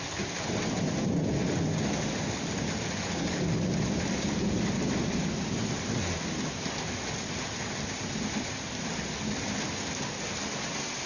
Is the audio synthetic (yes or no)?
no